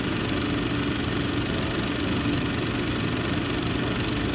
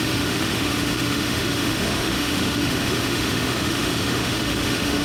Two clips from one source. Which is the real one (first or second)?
first